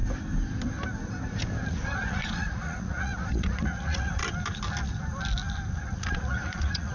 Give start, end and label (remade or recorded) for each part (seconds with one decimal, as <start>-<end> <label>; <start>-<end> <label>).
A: 0.0-1.7 recorded; 1.7-4.2 remade; 4.2-5.8 recorded; 5.8-6.9 remade

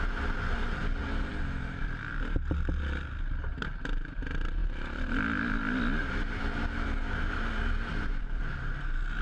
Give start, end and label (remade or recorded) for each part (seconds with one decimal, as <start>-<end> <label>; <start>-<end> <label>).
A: 0.0-1.3 recorded; 1.3-2.1 remade; 2.1-7.9 recorded; 7.9-8.4 remade; 8.4-9.2 recorded

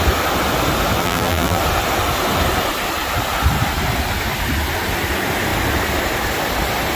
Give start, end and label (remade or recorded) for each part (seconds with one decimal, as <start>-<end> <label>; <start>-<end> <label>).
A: 0.0-1.0 recorded; 1.0-1.6 remade; 1.6-7.0 recorded